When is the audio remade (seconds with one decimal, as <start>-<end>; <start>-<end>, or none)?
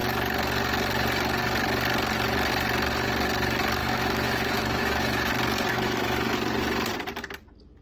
3.8-5.3; 5.7-6.3